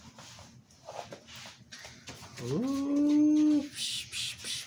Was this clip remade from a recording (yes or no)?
no